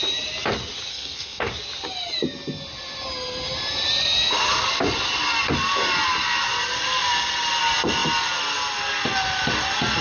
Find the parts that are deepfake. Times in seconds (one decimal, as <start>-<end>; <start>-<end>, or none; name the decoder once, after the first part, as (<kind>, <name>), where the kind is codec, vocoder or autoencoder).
0.9-1.5 (codec, SNAC)